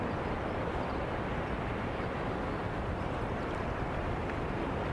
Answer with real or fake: fake